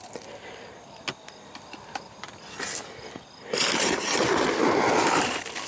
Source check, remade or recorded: recorded